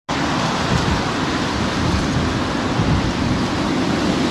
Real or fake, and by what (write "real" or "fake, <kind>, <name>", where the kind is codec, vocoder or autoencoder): real